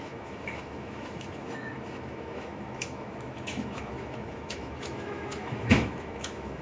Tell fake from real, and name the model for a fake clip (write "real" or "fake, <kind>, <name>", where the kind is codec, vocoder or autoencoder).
fake, autoencoder, DAC-VAE